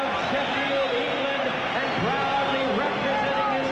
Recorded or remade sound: recorded